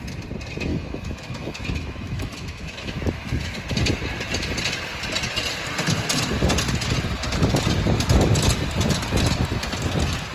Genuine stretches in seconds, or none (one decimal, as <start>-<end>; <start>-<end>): 0.0-0.7; 3.6-10.3